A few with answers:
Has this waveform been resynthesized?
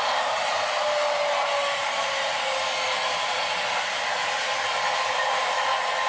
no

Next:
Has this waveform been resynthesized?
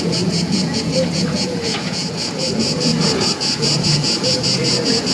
yes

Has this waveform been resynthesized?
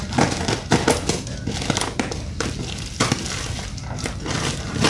no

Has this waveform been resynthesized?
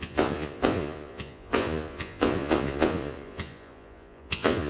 yes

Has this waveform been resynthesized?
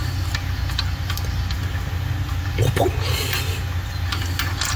no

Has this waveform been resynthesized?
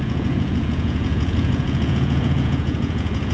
yes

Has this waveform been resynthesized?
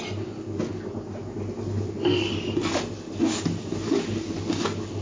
no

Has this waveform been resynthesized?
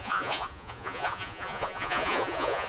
yes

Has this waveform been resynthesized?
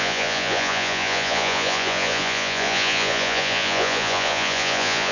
yes